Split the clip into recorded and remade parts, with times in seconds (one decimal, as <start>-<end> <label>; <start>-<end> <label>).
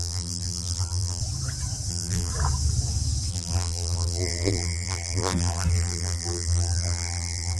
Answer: 0.0-1.2 remade; 1.2-1.9 recorded; 1.9-2.3 remade; 2.3-3.3 recorded; 3.3-7.6 remade